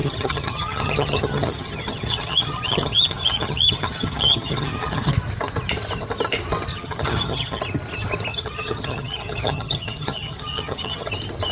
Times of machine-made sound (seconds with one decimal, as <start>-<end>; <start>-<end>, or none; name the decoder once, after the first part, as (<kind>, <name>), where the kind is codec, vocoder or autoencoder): 0.0-5.1 (vocoder, HiFi-GAN); 6.7-7.6; 8.3-11.1